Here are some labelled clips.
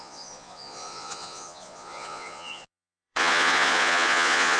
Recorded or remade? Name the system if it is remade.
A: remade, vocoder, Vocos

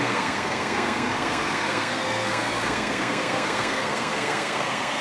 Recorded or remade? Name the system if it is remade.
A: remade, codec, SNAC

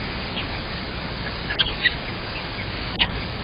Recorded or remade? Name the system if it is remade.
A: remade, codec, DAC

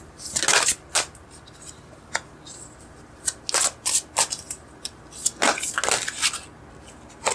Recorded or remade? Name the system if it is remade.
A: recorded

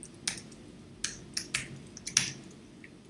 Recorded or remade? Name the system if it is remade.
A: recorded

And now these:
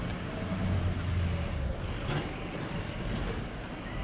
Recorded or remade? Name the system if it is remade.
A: recorded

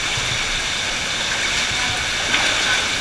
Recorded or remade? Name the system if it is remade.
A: recorded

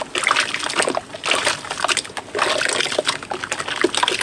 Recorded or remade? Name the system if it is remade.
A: recorded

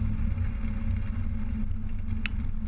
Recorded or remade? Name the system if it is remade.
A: recorded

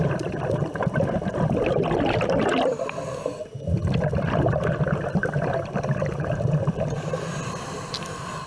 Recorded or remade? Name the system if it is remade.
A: remade, vocoder, BigVGAN v2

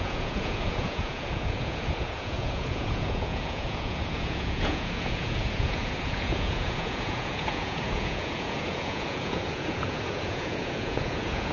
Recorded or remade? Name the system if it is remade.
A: remade, vocoder, Vocos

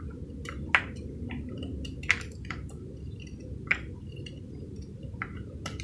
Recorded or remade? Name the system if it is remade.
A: recorded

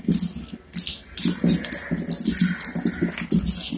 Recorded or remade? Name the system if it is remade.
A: recorded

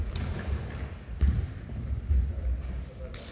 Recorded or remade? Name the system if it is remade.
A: recorded